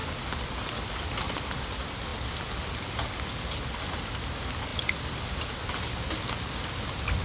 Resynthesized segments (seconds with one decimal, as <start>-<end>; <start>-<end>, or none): none